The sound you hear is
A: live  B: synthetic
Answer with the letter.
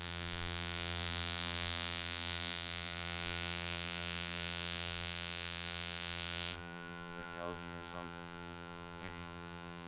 B